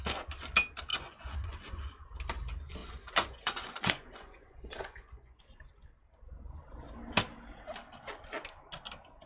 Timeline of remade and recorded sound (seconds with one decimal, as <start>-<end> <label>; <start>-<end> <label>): 0.0-0.9 recorded; 0.9-1.9 remade; 1.9-2.8 recorded; 2.8-5.4 remade; 5.4-9.3 recorded